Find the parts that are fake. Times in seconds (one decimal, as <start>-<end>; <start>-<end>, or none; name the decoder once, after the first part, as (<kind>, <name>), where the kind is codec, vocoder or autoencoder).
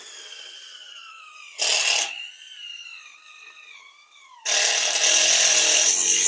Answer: none